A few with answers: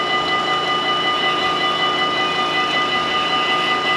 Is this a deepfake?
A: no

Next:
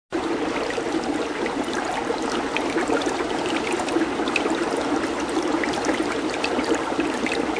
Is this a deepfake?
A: no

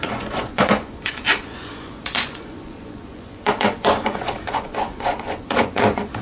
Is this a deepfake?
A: yes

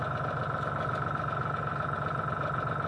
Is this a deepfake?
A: no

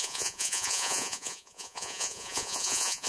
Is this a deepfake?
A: yes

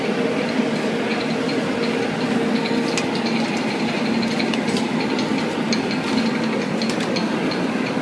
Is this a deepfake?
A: no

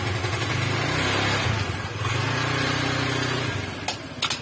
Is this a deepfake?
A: no